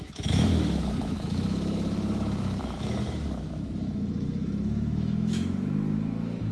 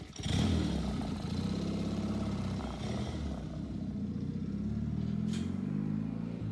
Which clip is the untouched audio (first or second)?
second